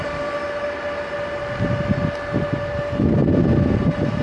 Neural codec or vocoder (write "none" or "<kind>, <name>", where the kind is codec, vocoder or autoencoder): none